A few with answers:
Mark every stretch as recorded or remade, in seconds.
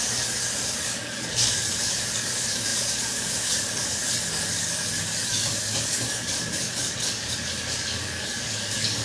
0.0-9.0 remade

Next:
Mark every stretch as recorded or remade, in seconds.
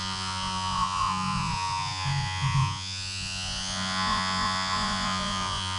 0.0-5.8 remade